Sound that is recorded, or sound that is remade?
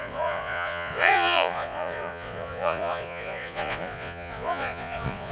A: remade